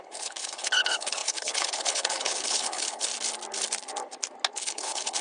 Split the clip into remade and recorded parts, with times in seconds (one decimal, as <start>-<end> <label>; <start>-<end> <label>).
0.0-3.1 remade; 3.1-4.6 recorded; 4.6-5.2 remade